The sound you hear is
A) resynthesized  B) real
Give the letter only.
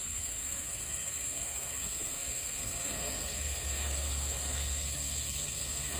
A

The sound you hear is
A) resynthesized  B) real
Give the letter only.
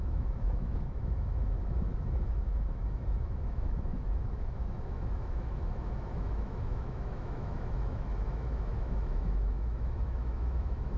A